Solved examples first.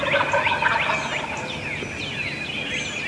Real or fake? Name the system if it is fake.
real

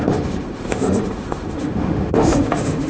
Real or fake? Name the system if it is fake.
fake, autoencoder, DAC-VAE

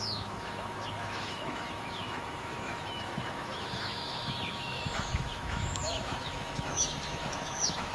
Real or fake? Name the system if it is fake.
fake, autoencoder, DAC-VAE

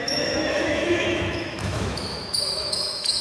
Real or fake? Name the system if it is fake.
fake, autoencoder, DAC-VAE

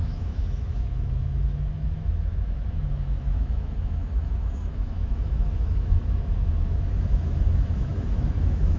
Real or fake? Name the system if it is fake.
fake, autoencoder, DAC-VAE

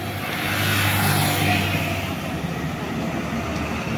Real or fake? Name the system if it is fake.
real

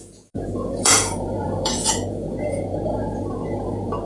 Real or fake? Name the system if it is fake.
fake, vocoder, Vocos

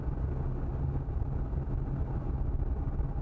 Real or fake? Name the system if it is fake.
real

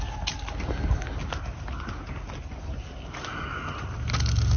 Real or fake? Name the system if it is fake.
real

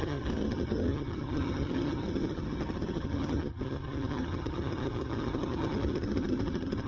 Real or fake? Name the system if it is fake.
fake, vocoder, HiFi-GAN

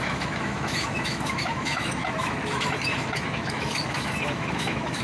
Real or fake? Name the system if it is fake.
fake, autoencoder, DAC-VAE